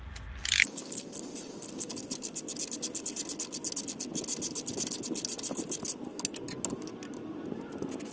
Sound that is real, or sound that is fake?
real